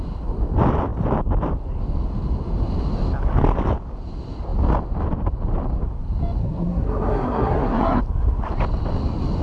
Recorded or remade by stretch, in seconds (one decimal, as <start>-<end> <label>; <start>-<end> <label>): 0.0-6.4 recorded; 6.4-8.0 remade; 8.0-9.4 recorded